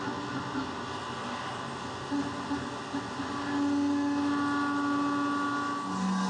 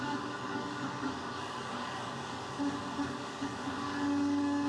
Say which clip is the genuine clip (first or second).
first